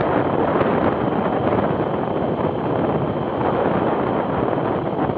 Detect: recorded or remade recorded